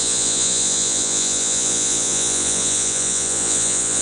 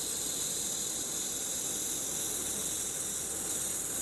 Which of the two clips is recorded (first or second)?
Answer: second